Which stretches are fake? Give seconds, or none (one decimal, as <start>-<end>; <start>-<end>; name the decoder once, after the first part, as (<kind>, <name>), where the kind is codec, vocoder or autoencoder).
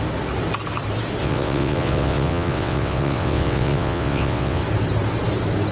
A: 1.2-4.6 (vocoder, WaveNeXt)